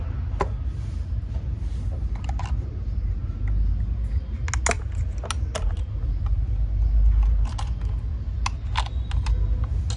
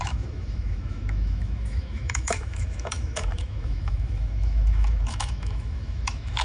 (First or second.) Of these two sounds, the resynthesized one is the second